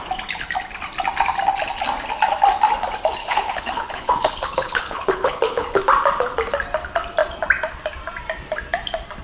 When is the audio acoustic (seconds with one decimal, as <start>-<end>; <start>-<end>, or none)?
0.0-3.2; 5.8-9.2